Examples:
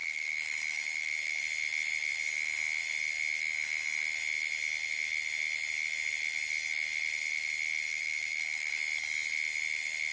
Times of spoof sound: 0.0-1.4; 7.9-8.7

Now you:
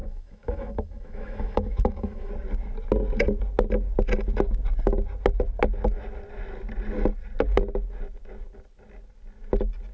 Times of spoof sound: 0.0-2.3

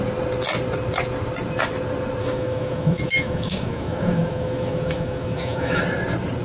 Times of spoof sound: 2.2-5.8